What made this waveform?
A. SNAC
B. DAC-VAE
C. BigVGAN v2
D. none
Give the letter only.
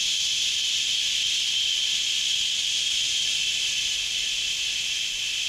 D